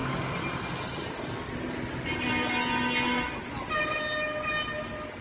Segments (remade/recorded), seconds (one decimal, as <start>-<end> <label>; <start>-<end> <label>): 0.0-5.2 recorded